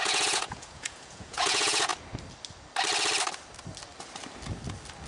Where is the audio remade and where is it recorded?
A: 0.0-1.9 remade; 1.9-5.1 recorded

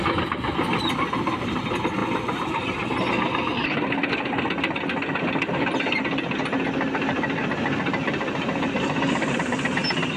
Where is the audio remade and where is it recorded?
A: 0.0-10.2 recorded

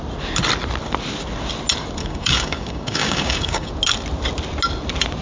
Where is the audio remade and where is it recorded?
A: 0.0-2.0 recorded; 2.0-3.7 remade; 3.7-5.2 recorded

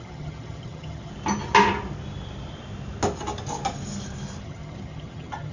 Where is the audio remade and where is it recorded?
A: 0.0-1.1 remade; 1.1-4.4 recorded; 4.4-5.5 remade

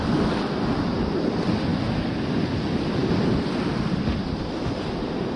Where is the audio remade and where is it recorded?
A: 0.0-5.4 recorded